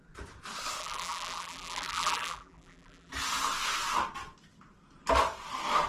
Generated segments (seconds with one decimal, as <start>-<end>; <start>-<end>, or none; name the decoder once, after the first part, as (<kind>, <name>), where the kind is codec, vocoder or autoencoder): 0.8-3.1 (vocoder, BigVGAN v2)